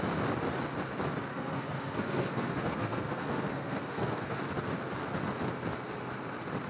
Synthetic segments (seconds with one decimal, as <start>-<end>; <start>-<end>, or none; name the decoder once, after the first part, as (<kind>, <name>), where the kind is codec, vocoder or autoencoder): 1.3-4.4 (codec, SNAC)